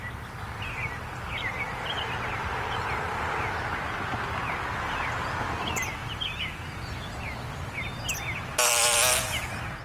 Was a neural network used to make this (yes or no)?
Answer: no